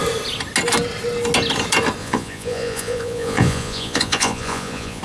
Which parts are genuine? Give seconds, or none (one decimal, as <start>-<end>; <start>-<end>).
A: 0.0-2.0